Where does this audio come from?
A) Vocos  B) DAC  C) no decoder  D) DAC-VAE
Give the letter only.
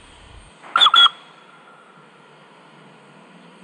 C